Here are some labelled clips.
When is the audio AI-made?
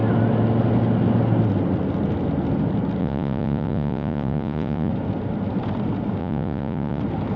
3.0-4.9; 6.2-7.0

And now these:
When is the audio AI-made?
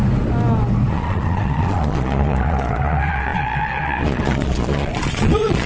0.9-5.7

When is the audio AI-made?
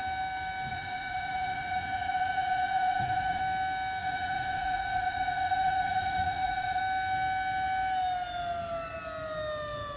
0.7-3.4; 4.0-6.8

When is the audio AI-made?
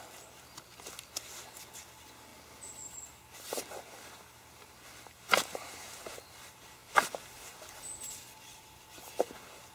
none